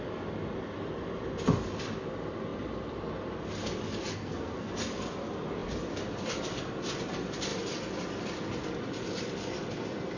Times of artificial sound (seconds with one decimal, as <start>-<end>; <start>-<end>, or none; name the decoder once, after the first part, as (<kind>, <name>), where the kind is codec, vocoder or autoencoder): 4.1-4.7 (codec, SNAC)